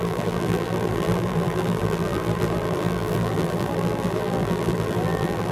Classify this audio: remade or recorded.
remade